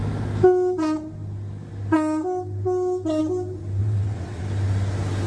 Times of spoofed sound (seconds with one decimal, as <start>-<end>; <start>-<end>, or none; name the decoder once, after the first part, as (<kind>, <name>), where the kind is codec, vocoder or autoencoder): 3.8-4.4 (vocoder, WaveNeXt)